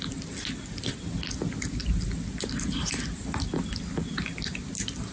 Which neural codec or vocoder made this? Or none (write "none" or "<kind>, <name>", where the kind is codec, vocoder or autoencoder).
none